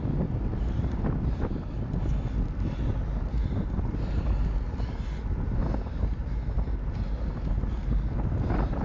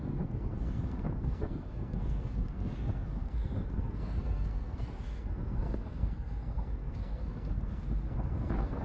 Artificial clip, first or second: second